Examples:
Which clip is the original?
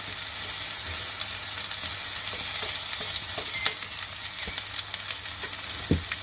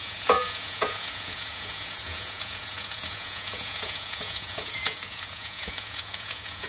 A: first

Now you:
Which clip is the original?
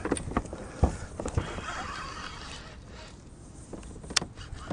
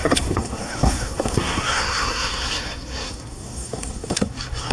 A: first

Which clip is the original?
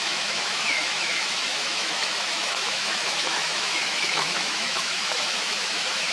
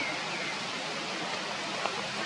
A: second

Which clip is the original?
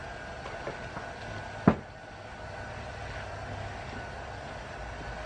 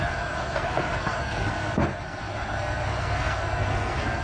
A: first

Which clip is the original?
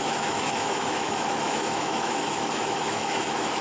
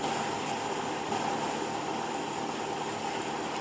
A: second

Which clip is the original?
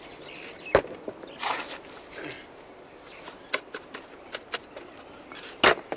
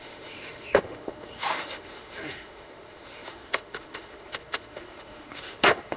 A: first